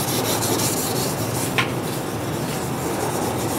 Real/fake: real